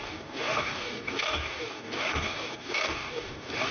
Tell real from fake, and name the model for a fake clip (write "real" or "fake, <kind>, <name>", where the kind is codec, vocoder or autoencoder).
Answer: fake, codec, DAC